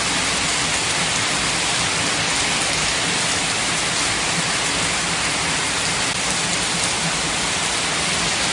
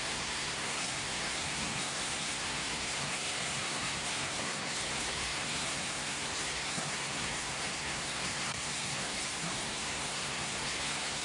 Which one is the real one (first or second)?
first